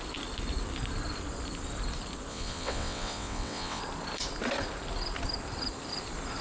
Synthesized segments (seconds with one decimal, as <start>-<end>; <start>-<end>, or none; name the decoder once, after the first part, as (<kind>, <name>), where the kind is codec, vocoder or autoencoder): 2.3-3.8 (vocoder, WaveNeXt)